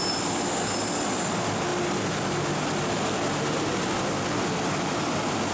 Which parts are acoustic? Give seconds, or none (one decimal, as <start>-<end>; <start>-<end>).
0.0-5.5